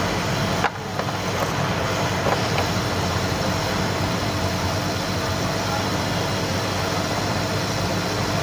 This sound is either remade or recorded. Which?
recorded